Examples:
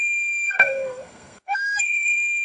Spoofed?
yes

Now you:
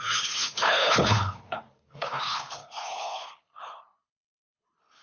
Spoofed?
yes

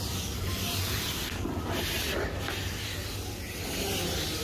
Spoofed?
no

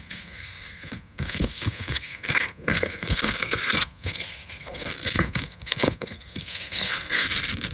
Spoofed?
yes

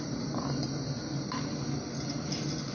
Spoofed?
no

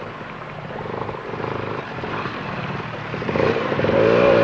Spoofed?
yes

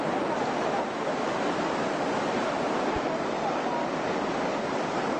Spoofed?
no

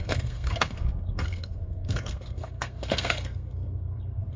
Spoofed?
yes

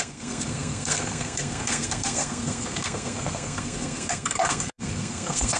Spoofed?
yes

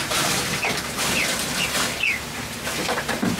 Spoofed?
no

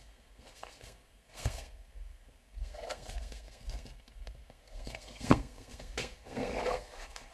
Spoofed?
yes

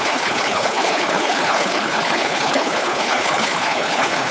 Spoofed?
yes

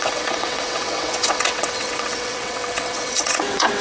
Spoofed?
yes